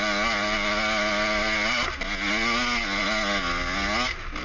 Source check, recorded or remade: recorded